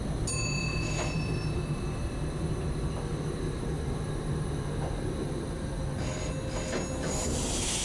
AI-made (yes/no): no